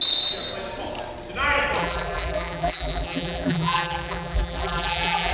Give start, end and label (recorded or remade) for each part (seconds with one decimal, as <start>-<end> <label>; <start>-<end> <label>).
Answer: 0.0-1.8 recorded; 1.8-5.3 remade